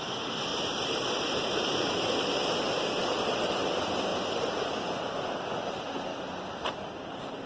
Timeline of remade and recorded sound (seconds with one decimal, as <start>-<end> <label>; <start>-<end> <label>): 0.0-7.5 recorded